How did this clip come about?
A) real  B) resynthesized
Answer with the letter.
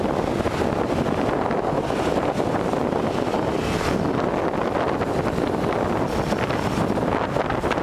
A